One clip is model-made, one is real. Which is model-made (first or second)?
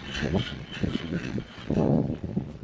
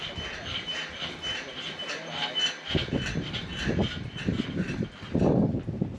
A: first